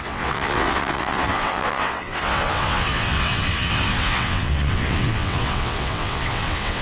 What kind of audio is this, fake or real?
fake